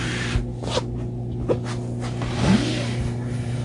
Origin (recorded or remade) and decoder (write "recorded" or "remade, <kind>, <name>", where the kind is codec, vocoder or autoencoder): recorded